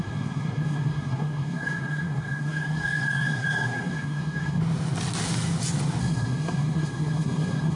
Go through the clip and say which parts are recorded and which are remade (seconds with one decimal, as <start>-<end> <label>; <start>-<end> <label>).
0.0-4.6 remade; 4.6-6.0 recorded; 6.0-7.8 remade